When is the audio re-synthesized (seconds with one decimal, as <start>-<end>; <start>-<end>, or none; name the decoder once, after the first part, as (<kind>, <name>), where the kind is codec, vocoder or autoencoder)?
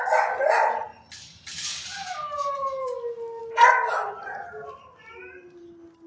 none